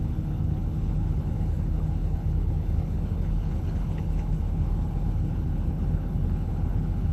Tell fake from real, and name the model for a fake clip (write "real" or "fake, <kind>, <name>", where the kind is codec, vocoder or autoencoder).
fake, codec, HILCodec